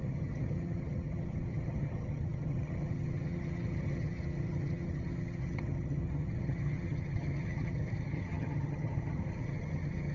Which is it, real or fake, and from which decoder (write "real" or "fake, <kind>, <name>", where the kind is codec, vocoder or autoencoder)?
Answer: fake, vocoder, HiFi-GAN